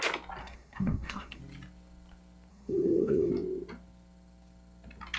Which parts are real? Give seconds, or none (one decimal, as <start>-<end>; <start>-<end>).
0.0-0.4; 1.4-2.5; 3.3-5.2